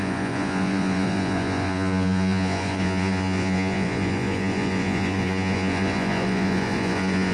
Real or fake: fake